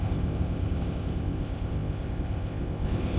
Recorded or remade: remade